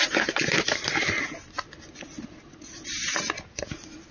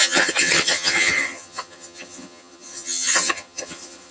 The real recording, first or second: first